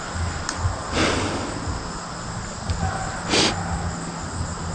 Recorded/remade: recorded